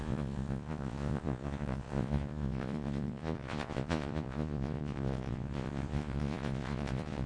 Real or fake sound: fake